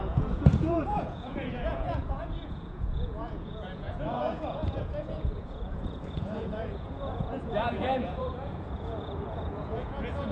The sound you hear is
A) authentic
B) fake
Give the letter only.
B